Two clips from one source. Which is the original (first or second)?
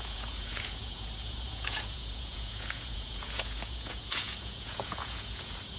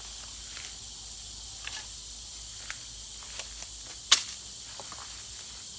second